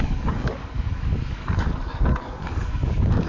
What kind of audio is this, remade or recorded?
remade